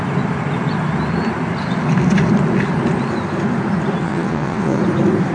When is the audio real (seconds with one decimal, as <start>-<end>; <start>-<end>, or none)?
0.0-4.0; 4.8-5.3